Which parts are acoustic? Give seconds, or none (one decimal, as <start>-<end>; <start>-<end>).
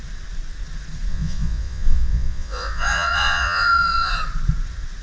0.0-1.1; 4.1-5.0